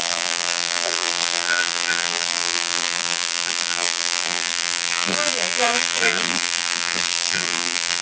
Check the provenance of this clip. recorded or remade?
remade